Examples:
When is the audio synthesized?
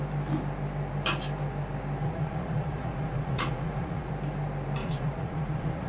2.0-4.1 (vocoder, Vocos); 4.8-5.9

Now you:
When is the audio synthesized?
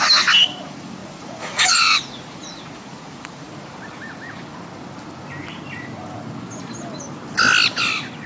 1.0-3.5 (vocoder, Vocos)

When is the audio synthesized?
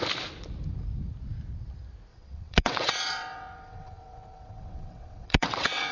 2.1-5.9 (vocoder, WaveNeXt)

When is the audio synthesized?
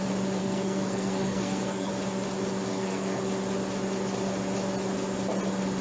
0.4-1.9 (codec, SNAC); 2.7-3.2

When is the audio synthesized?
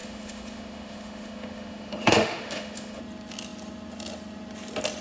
0.0-3.0 (autoencoder, DAC-VAE)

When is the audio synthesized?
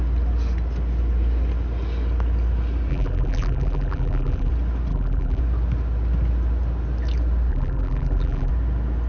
2.9-4.5 (vocoder, BigVGAN v2); 4.9-5.4; 7.5-8.5